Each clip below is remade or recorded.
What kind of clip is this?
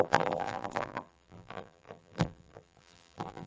remade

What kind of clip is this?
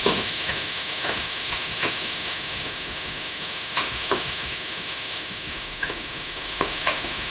remade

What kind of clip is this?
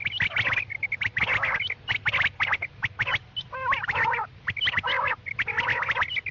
recorded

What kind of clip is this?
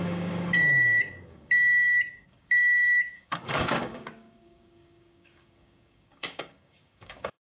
remade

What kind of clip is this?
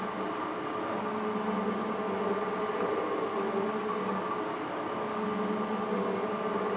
recorded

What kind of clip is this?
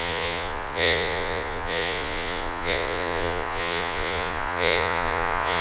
remade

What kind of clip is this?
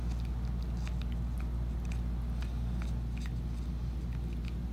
recorded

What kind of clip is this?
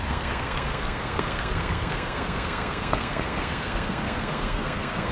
remade